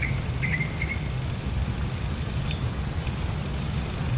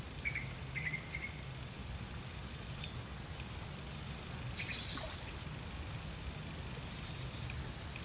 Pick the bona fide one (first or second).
second